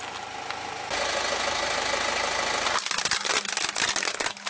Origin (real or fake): real